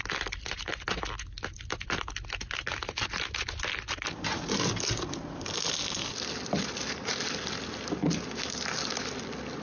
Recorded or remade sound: recorded